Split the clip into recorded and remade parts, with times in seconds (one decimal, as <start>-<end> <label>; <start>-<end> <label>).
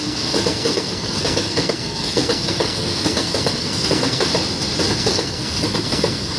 0.0-4.3 remade; 4.3-4.9 recorded; 4.9-6.4 remade